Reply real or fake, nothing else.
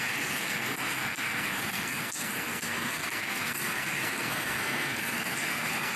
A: fake